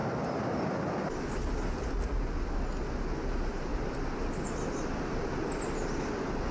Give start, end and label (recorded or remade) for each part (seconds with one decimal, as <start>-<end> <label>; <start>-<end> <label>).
0.0-6.5 recorded